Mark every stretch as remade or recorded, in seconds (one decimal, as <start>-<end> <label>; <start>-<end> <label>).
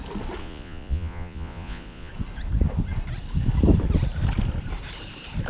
0.0-0.4 recorded; 0.4-2.1 remade; 2.1-5.5 recorded